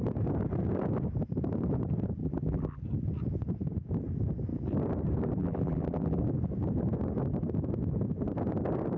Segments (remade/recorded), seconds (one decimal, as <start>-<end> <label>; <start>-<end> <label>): 0.0-2.2 recorded; 2.2-2.8 remade; 2.8-5.4 recorded; 5.4-6.2 remade; 6.2-9.0 recorded